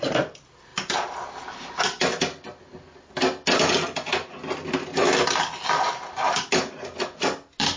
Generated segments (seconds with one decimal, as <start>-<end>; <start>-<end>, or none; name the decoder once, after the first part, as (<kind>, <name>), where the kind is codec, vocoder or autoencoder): none